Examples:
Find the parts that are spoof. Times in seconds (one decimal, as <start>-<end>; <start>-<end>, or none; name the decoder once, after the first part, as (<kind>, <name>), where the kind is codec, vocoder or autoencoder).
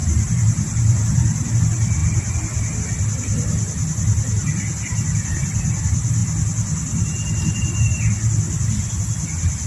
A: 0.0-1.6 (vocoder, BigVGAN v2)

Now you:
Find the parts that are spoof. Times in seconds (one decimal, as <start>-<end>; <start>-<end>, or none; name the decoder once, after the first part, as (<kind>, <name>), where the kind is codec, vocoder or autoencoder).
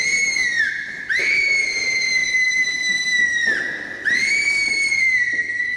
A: 0.0-0.4 (vocoder, BigVGAN v2); 0.9-5.8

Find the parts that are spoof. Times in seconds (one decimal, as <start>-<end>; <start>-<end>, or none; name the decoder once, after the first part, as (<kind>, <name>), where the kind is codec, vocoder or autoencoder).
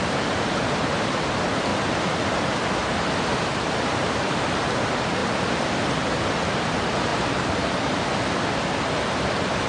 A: 0.0-1.7 (vocoder, BigVGAN v2); 2.9-5.2; 6.4-7.1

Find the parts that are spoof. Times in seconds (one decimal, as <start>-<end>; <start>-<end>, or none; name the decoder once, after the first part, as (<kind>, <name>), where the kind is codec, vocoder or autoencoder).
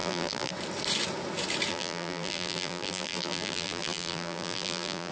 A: 0.0-0.5 (vocoder, BigVGAN v2); 1.7-5.1